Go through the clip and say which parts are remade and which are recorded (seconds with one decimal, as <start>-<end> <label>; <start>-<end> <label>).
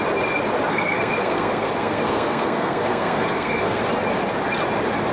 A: 0.0-0.7 recorded; 0.7-3.8 remade; 3.8-5.1 recorded